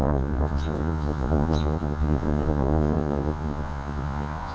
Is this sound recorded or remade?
remade